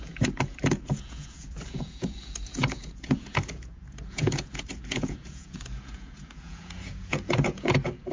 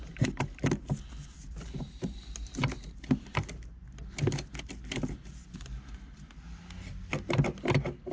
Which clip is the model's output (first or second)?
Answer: first